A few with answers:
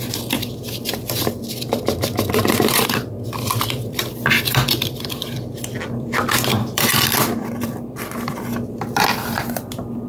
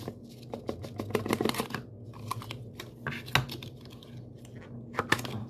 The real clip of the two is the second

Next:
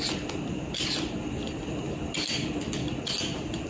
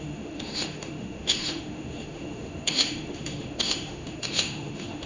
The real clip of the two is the first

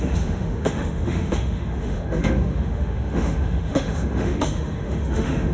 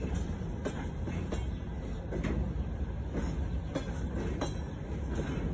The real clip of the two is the second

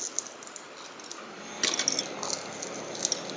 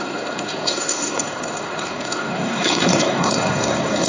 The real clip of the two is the first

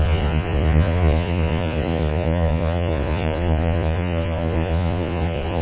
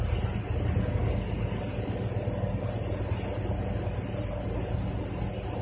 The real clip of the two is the second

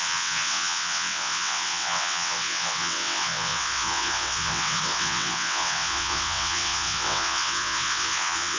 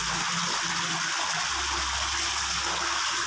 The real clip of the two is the second